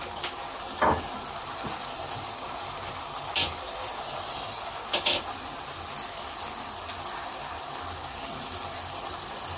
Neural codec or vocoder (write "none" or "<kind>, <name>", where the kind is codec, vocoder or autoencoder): none